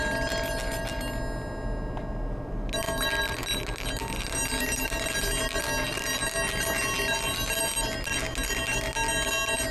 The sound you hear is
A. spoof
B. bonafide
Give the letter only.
B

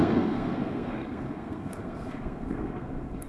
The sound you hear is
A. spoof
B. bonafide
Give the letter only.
A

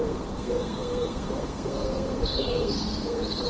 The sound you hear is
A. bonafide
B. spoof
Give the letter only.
B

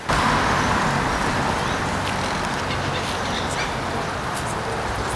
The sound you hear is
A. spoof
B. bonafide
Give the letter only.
B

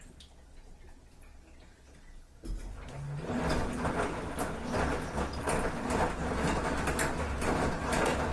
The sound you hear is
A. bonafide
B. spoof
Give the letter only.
A